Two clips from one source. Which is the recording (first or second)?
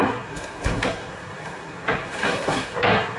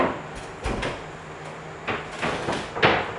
second